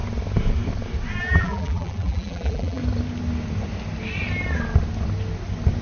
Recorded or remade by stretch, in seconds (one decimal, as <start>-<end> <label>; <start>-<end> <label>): 0.0-1.2 recorded; 1.2-2.8 remade; 2.8-5.8 recorded